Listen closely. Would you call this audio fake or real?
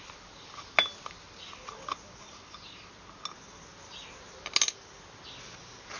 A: real